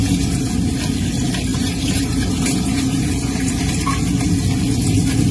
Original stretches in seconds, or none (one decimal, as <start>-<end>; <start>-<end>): 0.0-1.5; 3.1-5.3